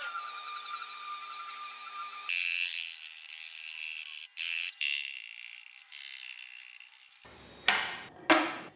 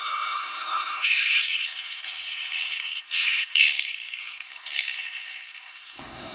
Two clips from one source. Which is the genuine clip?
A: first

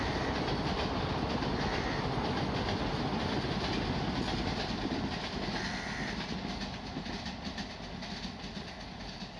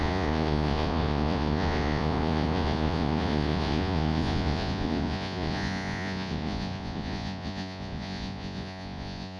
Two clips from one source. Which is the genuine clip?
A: first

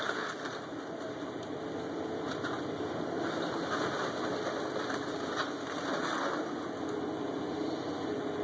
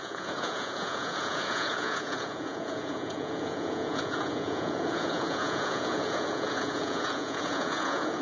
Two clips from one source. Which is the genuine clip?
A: first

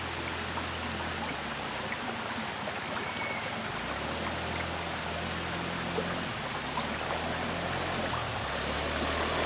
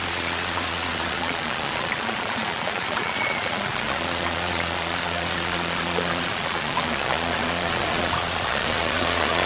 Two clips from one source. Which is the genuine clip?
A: first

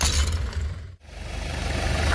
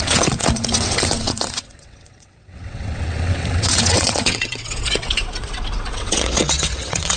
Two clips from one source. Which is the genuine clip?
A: first